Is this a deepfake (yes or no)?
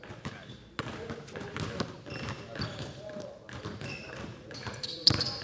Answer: no